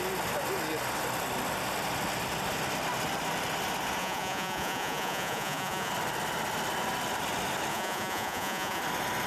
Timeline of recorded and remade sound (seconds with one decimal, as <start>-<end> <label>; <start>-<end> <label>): 0.0-4.0 recorded; 4.0-5.9 remade; 5.9-7.7 recorded; 7.7-8.8 remade; 8.8-9.3 recorded